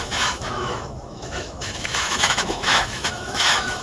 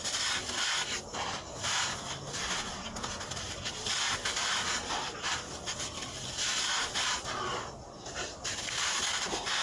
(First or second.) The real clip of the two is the second